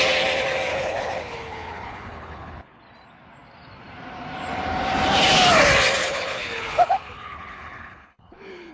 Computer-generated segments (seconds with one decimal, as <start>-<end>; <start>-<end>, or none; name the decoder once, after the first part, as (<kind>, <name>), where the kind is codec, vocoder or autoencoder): 0.7-2.8 (codec, HILCodec); 6.0-8.7